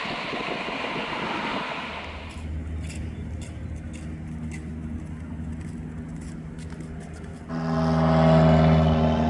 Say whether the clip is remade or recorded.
recorded